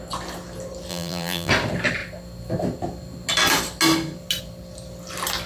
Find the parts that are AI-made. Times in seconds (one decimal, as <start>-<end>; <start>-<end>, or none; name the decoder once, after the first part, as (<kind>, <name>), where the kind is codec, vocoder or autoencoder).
0.9-1.5 (vocoder, BigVGAN v2)